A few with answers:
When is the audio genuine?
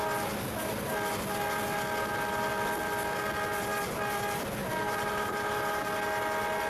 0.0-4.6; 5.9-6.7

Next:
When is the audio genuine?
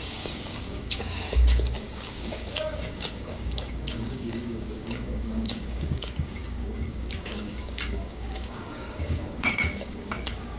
none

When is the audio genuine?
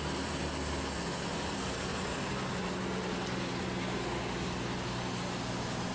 0.0-5.9